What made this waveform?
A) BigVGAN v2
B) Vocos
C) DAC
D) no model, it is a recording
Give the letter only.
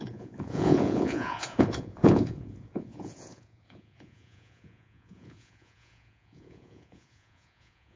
B